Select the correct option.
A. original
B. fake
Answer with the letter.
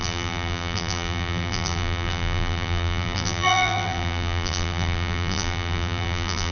B